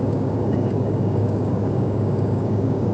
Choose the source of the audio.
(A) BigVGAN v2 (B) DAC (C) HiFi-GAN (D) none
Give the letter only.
B